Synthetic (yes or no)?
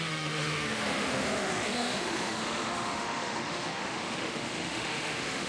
yes